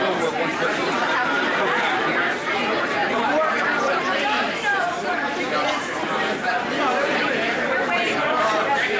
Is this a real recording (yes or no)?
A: no